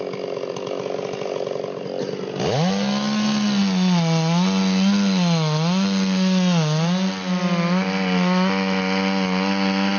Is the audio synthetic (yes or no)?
no